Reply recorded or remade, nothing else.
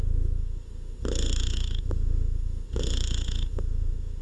remade